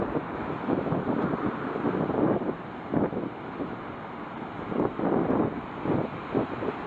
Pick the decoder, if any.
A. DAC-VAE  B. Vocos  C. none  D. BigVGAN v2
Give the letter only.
C